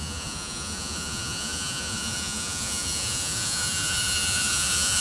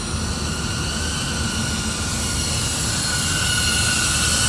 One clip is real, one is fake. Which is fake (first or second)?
first